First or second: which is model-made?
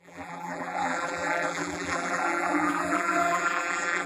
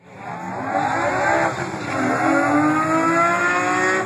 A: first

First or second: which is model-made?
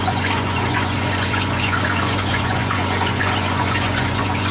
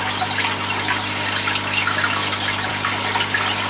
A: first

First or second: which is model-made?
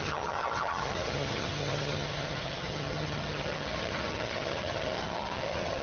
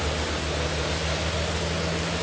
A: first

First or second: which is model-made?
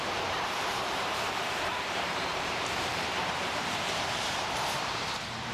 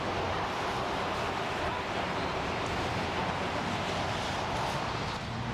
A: first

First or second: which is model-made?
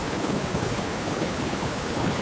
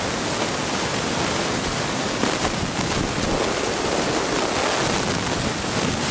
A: first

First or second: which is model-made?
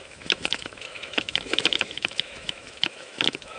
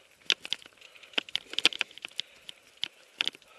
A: first